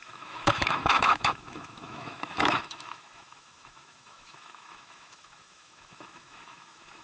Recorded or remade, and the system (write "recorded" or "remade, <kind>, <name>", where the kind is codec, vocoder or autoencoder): remade, autoencoder, DAC-VAE